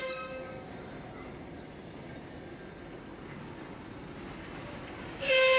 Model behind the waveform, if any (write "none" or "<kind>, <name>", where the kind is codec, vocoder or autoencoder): none